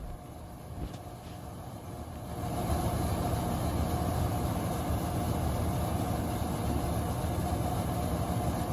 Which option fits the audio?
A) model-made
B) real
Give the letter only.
B